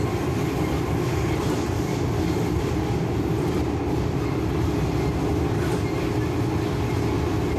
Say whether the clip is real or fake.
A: real